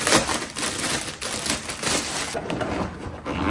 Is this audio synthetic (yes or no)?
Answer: no